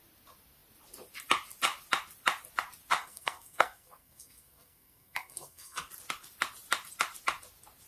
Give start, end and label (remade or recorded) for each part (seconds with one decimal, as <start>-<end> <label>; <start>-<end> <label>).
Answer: 0.0-3.0 recorded; 3.0-5.9 remade; 5.9-7.9 recorded